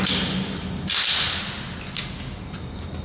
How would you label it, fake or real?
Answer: real